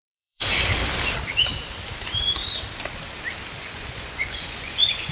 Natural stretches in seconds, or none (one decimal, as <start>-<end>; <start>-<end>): 0.4-3.5